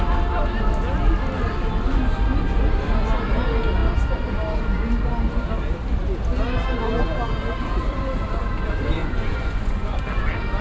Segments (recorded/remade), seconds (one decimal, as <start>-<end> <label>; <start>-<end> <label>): 0.0-9.0 recorded; 9.0-10.0 remade; 10.0-10.6 recorded